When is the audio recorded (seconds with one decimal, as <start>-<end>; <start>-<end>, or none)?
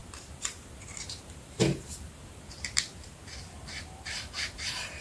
3.2-3.7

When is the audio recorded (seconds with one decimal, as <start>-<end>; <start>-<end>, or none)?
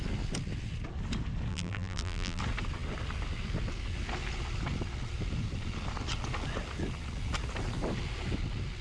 0.0-1.5; 2.4-8.8